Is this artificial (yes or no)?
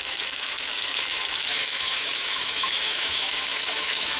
yes